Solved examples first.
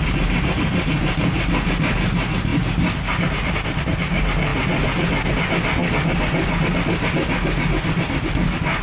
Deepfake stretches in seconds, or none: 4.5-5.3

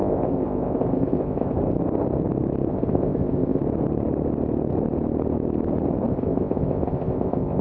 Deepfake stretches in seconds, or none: 0.0-1.6; 2.7-3.6; 6.1-7.6

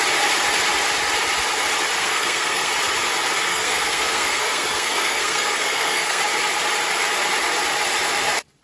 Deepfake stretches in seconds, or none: 2.0-2.7; 3.5-6.2

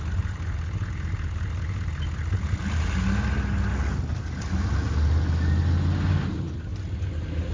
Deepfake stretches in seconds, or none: none

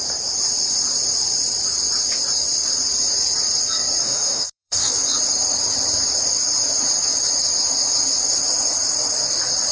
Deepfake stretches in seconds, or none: 4.0-4.9